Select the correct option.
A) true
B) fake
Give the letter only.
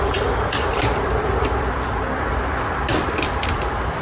B